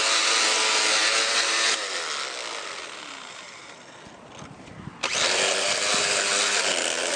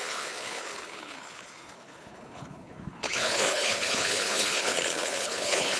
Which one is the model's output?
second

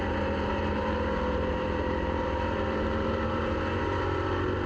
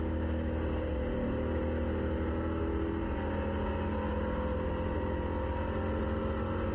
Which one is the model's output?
first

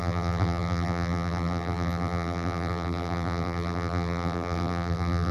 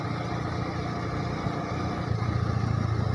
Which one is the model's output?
first